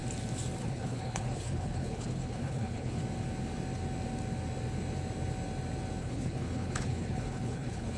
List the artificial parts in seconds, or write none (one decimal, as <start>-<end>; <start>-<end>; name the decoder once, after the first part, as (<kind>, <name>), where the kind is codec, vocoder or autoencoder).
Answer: 0.6-3.0 (codec, HILCodec); 6.0-8.0